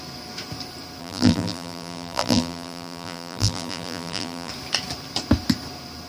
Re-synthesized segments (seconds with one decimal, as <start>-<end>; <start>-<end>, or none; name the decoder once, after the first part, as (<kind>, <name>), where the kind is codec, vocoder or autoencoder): 1.0-4.5 (vocoder, BigVGAN v2)